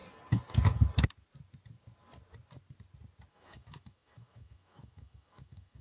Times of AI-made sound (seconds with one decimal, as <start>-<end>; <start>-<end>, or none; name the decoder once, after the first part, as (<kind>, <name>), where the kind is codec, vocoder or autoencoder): 3.3-5.8 (autoencoder, DAC-VAE)